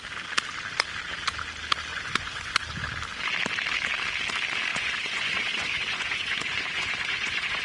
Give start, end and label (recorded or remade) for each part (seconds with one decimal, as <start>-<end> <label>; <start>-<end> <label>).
0.0-1.9 recorded; 1.9-2.5 remade; 2.5-4.7 recorded; 4.7-7.6 remade